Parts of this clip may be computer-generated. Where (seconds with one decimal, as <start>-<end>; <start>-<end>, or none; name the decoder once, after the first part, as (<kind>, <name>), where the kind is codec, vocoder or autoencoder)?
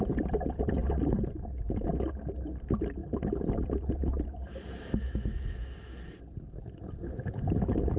0.8-1.6 (vocoder, BigVGAN v2); 3.0-5.0